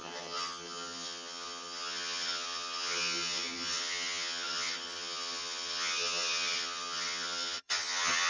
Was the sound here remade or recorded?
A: remade